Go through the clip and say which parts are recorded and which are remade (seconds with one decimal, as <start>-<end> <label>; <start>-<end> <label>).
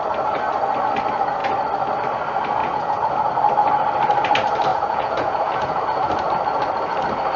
0.0-2.6 recorded; 2.6-3.3 remade; 3.3-4.7 recorded; 4.7-5.8 remade; 5.8-7.4 recorded